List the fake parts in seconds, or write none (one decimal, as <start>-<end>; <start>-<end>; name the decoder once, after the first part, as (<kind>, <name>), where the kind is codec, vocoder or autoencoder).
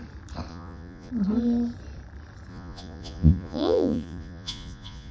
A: 0.5-1.1 (vocoder, Vocos); 2.5-5.1